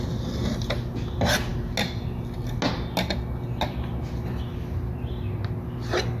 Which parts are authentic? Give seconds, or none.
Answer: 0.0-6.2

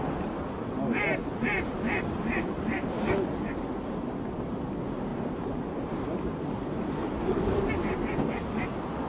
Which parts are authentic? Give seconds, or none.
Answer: 0.0-1.2; 2.9-5.1; 7.7-9.1

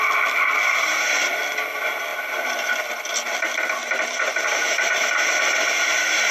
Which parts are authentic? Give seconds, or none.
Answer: 0.0-3.8; 4.4-6.3

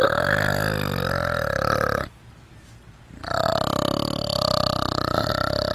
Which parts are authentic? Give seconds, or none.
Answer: 0.0-5.7